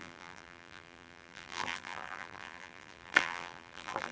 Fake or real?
fake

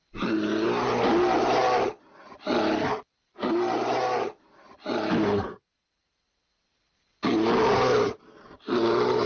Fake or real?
real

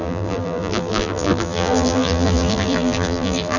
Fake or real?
fake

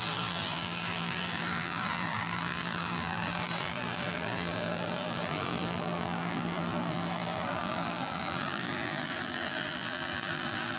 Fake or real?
fake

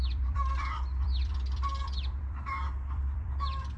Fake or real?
fake